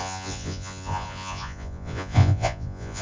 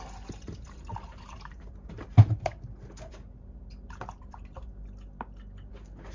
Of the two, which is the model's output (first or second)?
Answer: first